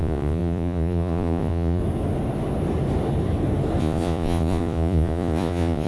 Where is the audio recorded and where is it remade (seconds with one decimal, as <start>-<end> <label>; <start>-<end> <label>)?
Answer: 0.0-1.8 remade; 1.8-3.8 recorded; 3.8-5.9 remade